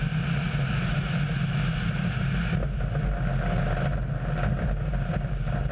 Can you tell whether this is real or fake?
real